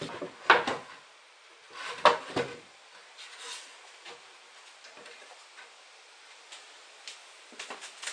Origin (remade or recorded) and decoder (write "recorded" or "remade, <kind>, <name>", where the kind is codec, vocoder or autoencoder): recorded